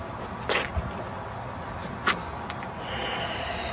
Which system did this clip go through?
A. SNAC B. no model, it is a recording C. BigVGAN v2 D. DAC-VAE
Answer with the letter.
B